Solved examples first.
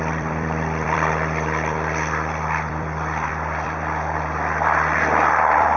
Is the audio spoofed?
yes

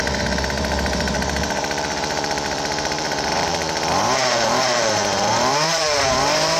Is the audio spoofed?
yes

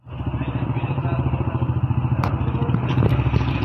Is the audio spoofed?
no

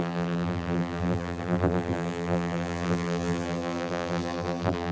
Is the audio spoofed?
yes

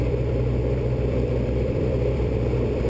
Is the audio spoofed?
yes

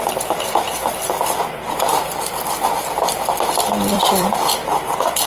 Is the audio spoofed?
yes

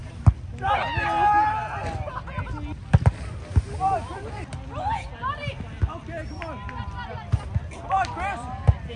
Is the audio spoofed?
no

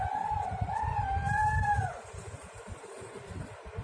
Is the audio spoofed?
yes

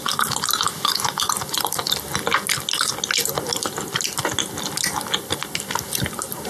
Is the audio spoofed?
no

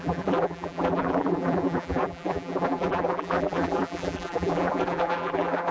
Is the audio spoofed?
yes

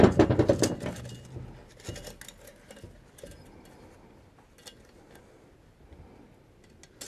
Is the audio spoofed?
no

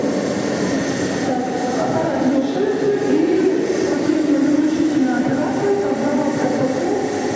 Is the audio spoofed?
no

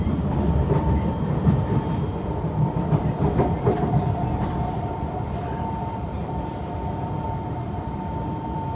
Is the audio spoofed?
yes